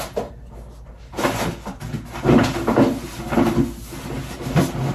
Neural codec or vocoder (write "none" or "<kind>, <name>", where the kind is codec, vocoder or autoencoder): none